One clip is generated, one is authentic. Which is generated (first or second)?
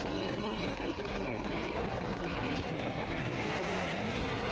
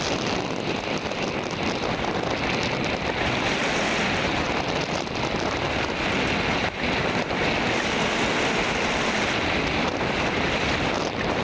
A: first